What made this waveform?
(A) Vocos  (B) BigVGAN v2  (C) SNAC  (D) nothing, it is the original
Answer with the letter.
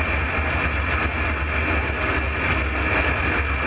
D